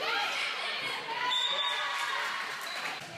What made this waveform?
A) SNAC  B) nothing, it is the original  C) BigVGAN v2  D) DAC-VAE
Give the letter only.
C